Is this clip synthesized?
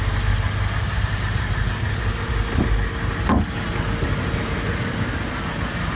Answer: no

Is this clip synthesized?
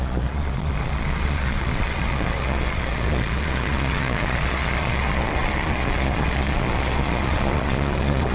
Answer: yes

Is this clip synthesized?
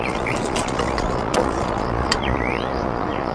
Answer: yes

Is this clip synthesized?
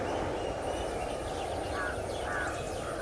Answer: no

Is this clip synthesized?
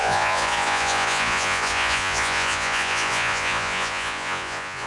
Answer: yes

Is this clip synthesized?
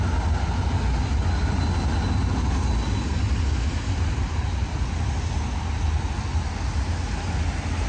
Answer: no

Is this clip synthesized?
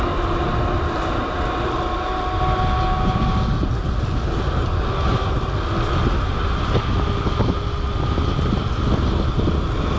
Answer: no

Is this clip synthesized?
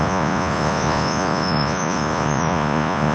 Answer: yes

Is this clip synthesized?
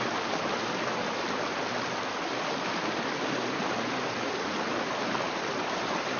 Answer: no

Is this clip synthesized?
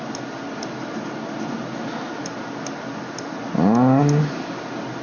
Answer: no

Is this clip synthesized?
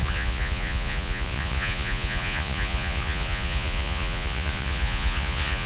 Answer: yes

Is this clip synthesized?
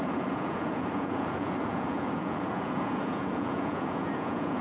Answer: yes